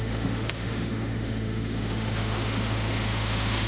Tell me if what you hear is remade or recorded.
remade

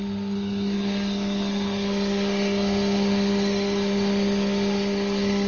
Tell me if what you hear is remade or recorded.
remade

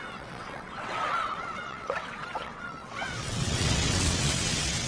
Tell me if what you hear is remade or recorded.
remade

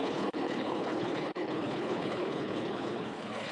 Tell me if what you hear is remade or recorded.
remade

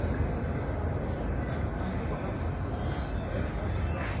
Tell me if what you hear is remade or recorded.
recorded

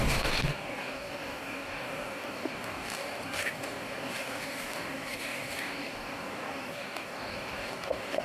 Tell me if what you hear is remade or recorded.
remade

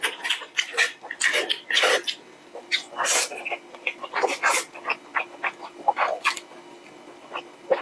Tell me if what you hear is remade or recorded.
recorded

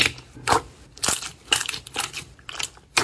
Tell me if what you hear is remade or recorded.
recorded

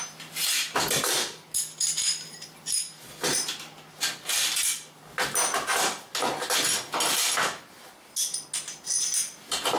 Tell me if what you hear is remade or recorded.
recorded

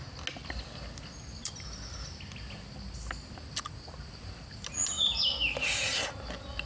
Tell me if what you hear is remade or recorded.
recorded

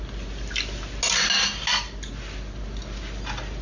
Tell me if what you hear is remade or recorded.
recorded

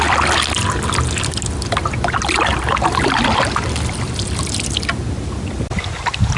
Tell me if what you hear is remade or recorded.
recorded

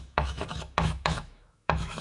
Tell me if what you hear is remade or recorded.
remade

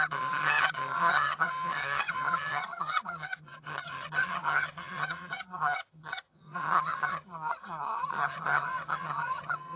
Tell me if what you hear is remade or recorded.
remade